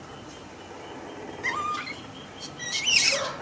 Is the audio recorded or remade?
recorded